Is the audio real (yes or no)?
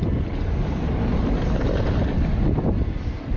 yes